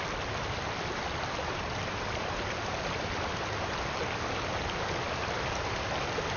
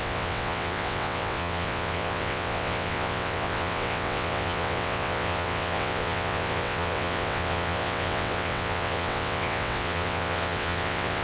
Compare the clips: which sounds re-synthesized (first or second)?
second